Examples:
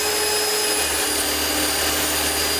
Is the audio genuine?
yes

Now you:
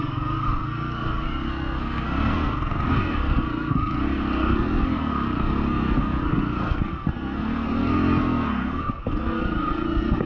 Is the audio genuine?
no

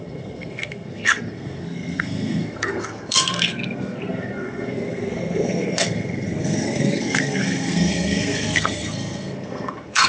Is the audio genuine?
no